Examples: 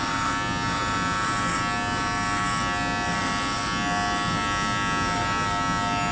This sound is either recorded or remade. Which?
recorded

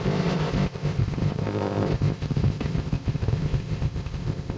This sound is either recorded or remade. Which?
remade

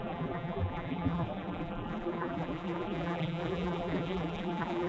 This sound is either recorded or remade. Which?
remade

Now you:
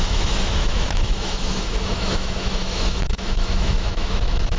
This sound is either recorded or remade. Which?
remade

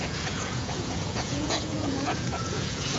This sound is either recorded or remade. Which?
remade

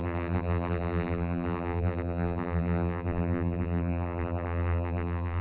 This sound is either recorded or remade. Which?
remade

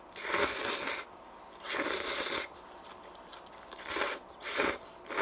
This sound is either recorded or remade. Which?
recorded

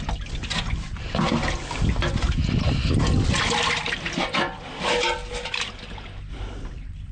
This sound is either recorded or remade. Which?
recorded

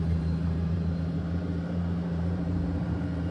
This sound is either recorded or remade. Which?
remade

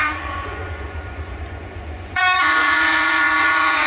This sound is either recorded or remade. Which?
remade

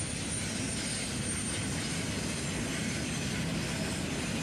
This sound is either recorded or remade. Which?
recorded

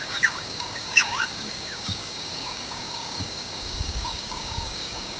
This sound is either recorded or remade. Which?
remade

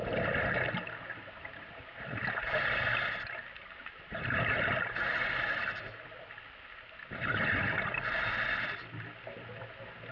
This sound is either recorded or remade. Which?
recorded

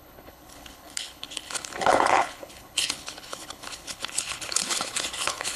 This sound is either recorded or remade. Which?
remade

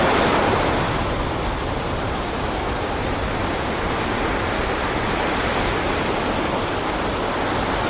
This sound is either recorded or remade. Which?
recorded